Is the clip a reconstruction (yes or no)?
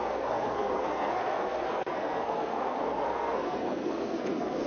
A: yes